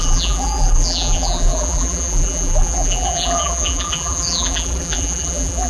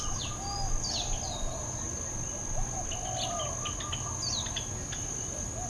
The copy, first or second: first